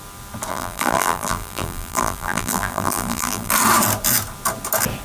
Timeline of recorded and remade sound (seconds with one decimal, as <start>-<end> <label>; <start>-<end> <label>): 0.0-0.5 recorded; 0.5-3.5 remade; 3.5-5.0 recorded

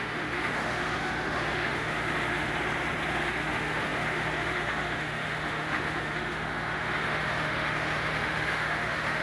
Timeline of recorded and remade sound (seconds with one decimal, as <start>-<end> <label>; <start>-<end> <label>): 0.0-2.5 remade; 2.5-3.1 recorded; 3.1-9.2 remade

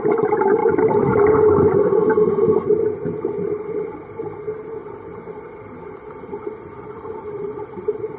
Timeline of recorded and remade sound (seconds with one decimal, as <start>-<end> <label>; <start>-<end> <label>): 0.0-8.2 recorded

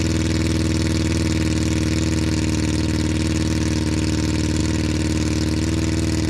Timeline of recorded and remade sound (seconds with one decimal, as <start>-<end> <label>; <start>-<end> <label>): 0.0-6.3 recorded

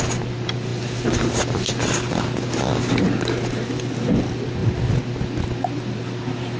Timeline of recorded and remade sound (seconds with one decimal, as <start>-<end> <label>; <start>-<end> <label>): 0.0-6.6 recorded

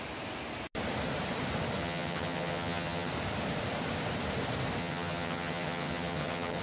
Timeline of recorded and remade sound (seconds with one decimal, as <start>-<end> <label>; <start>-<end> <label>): 0.0-1.8 recorded; 1.8-3.1 remade; 3.1-4.8 recorded; 4.8-6.6 remade